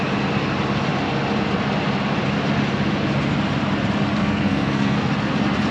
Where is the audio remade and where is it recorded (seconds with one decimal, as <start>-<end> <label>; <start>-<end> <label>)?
0.0-4.2 recorded; 4.2-5.1 remade; 5.1-5.7 recorded